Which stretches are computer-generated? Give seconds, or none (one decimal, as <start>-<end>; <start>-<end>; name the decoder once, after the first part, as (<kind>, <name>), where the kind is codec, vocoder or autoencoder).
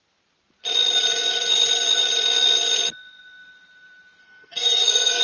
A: 4.2-5.2 (codec, SNAC)